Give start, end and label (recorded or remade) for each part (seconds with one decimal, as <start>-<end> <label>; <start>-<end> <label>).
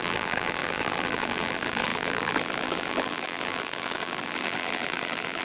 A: 0.0-5.4 remade